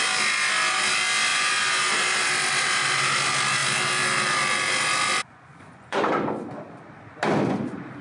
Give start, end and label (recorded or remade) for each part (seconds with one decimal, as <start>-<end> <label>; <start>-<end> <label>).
0.0-1.3 recorded; 1.3-1.9 remade; 1.9-5.3 recorded; 5.3-6.0 remade; 6.0-8.0 recorded